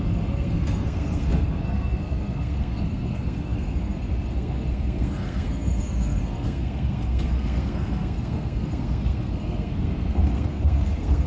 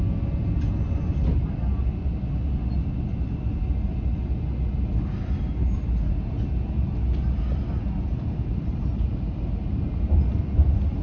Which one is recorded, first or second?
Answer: second